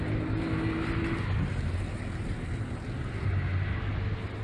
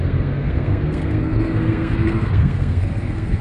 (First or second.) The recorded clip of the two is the first